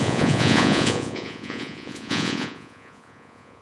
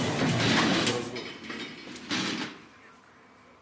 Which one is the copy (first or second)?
first